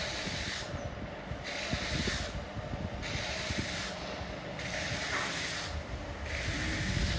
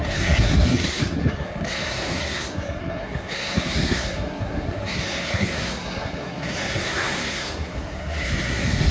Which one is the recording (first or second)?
first